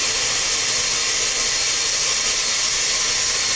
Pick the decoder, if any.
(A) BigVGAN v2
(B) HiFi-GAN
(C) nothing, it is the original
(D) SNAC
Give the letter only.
C